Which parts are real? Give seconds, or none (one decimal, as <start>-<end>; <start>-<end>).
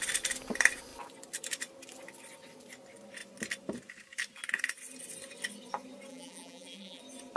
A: 0.0-6.1; 7.0-7.4